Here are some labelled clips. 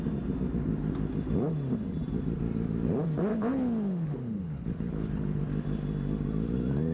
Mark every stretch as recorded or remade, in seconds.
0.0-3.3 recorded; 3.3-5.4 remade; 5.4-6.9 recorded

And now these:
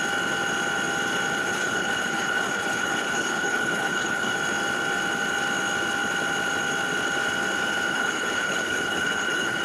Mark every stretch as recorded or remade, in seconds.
0.0-1.4 recorded; 1.4-4.4 remade; 4.4-7.9 recorded; 7.9-9.6 remade

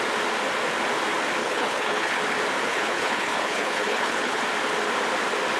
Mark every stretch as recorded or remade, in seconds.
0.0-1.4 recorded; 1.4-2.2 remade; 2.2-2.7 recorded; 2.7-4.4 remade; 4.4-5.6 recorded

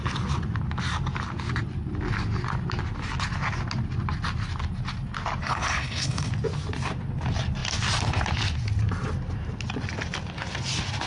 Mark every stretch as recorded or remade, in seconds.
0.0-5.4 recorded; 5.4-6.3 remade; 6.3-11.1 recorded

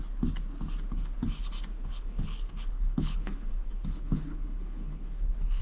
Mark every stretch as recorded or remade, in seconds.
0.0-0.9 recorded; 0.9-1.4 remade; 1.4-1.8 recorded; 1.8-5.6 remade